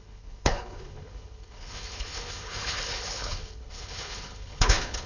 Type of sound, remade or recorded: remade